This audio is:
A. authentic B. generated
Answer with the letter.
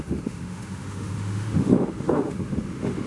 B